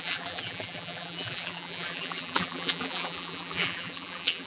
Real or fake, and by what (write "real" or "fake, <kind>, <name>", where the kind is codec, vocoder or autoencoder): fake, vocoder, BigVGAN v2